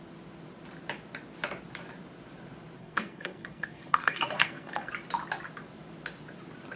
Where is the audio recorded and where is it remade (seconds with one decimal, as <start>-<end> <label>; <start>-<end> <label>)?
0.0-2.8 recorded; 2.8-4.9 remade; 4.9-6.8 recorded